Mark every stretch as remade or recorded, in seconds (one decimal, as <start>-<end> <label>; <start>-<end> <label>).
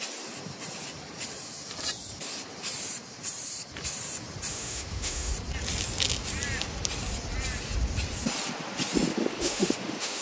0.0-4.5 recorded; 4.5-5.3 remade; 5.3-9.1 recorded; 9.1-10.2 remade